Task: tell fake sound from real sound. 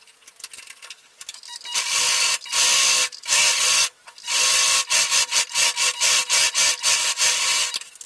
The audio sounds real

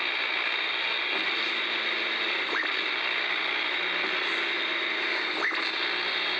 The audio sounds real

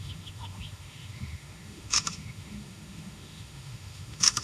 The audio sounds fake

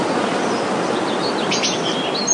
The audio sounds real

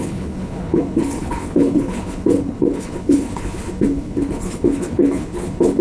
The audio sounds fake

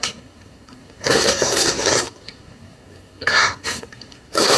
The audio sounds fake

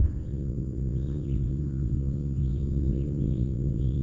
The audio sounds fake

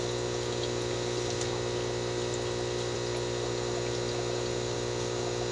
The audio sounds real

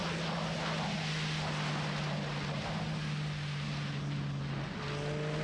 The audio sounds real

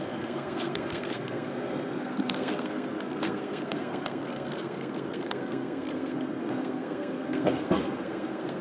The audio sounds fake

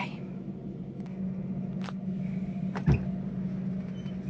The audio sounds real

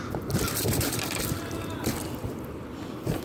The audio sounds fake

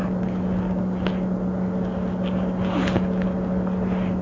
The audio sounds real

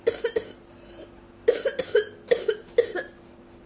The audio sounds real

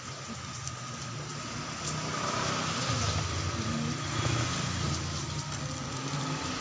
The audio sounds real